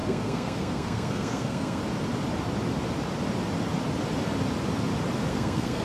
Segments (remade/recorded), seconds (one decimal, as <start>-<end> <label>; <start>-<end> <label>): 0.0-1.8 remade; 1.8-5.3 recorded; 5.3-5.8 remade